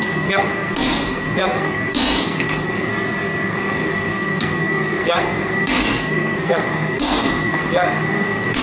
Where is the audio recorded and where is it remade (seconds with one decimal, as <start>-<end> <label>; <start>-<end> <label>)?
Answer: 0.0-2.9 remade; 2.9-3.5 recorded; 3.5-8.6 remade